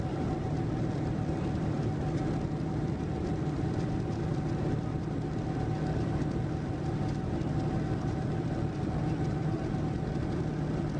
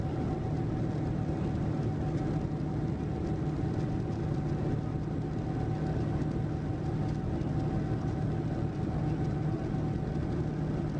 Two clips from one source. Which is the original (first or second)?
second